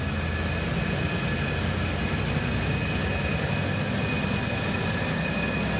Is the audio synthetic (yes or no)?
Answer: no